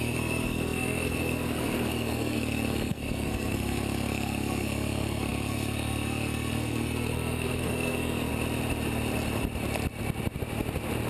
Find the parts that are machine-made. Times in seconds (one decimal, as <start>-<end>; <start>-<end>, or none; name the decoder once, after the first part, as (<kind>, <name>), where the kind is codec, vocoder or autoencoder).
0.0-8.3 (codec, SNAC)